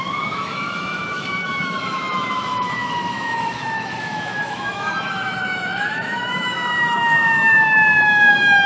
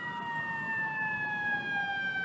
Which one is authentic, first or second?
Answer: second